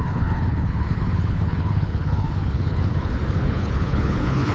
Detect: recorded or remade remade